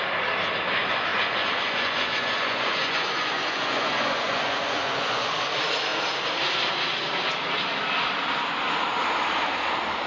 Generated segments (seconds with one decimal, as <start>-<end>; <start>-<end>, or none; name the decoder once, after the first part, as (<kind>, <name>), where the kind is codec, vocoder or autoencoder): 1.1-5.3 (vocoder, Vocos)